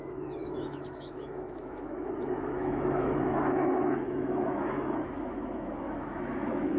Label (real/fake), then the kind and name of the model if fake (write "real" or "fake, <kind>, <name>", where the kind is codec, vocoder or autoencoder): fake, autoencoder, DAC-VAE